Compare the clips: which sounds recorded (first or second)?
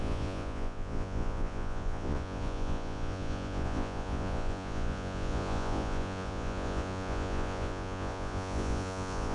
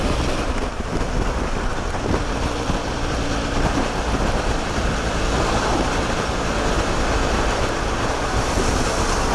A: second